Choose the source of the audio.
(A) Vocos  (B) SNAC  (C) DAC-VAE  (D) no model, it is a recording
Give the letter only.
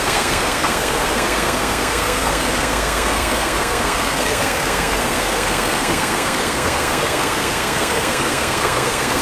B